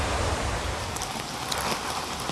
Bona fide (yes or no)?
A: yes